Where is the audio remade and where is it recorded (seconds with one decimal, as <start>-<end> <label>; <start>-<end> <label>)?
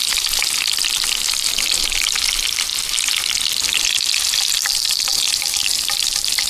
0.0-6.5 recorded